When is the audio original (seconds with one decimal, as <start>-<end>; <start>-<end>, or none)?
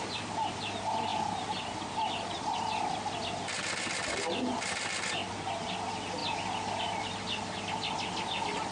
5.2-5.7